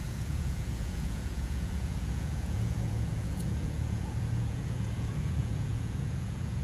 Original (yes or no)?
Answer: no